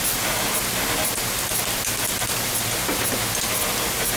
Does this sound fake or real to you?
real